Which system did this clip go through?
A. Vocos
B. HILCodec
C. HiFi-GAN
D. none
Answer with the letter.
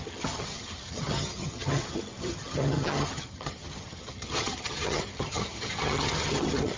C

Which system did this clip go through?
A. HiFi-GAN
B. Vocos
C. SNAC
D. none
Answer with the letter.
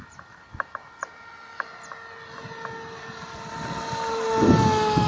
D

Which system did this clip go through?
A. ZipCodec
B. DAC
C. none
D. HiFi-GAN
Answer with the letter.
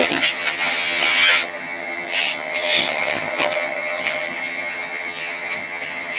D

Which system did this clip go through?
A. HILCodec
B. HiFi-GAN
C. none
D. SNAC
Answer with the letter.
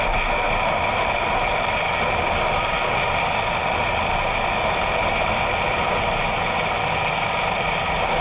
C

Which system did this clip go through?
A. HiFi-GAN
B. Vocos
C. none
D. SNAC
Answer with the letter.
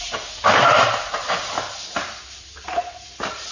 C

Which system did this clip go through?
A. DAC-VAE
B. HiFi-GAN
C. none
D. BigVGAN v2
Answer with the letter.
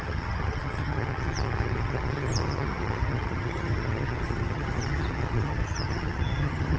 B